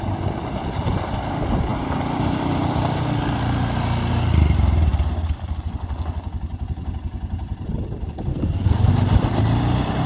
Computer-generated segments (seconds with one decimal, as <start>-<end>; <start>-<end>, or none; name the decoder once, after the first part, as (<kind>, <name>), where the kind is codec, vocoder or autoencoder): 8.3-8.9 (codec, SNAC)